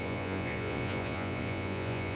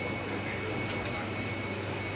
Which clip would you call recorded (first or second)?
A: second